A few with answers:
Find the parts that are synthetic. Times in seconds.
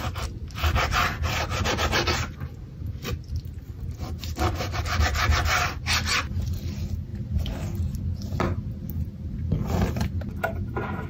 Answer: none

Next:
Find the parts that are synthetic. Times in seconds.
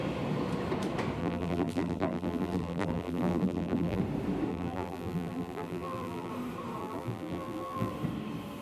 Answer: 1.2-4.0 (vocoder, BigVGAN v2); 4.5-6.3; 6.8-7.9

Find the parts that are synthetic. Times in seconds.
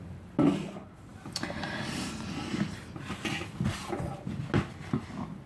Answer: 1.1-2.5 (vocoder, BigVGAN v2)